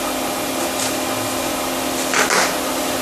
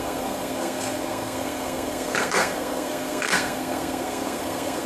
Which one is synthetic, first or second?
second